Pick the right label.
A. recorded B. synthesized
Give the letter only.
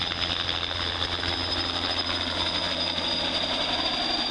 A